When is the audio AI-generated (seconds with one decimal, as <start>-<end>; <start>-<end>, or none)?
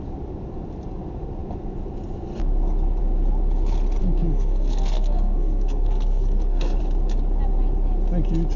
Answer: 4.0-6.8